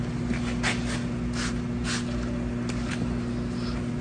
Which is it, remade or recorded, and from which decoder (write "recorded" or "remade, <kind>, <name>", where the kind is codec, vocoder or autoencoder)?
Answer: recorded